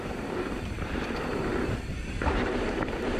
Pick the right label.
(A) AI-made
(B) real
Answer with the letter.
A